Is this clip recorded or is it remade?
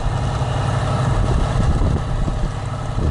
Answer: recorded